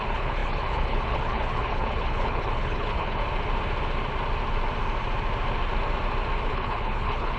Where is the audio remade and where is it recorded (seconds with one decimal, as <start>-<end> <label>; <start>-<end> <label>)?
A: 0.0-3.2 remade; 3.2-6.5 recorded; 6.5-7.4 remade